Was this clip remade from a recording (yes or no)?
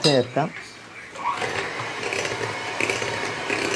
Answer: yes